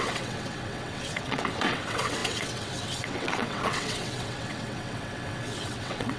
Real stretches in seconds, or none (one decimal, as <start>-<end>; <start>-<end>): none